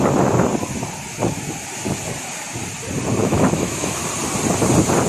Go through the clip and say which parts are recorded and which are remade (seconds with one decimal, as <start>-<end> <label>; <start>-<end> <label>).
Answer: 0.0-3.2 recorded; 3.2-4.0 remade; 4.0-5.1 recorded